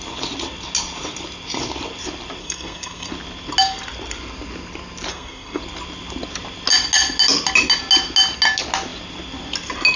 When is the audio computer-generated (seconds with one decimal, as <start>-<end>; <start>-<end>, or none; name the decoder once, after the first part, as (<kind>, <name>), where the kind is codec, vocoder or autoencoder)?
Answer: 2.4-3.1 (codec, SNAC); 5.1-5.6

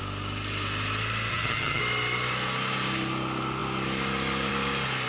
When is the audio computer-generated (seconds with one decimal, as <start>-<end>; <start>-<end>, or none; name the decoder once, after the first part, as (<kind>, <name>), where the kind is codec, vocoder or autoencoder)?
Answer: 1.3-1.8 (vocoder, HiFi-GAN)

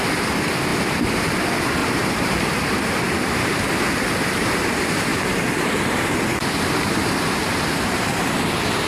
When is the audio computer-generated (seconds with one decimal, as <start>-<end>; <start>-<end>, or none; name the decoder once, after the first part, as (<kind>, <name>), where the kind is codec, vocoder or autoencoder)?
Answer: 1.8-3.7 (vocoder, BigVGAN v2); 5.1-7.8

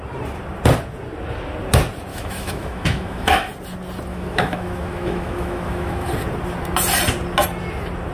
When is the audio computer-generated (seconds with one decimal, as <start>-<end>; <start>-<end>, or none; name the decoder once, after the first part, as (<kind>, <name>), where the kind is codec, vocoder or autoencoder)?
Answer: 2.1-3.5 (autoencoder, DAC-VAE); 4.1-6.1

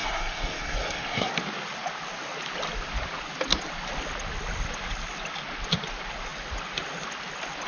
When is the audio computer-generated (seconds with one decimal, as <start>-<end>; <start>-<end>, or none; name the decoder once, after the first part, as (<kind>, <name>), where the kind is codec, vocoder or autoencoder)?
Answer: 0.0-1.3 (codec, SNAC)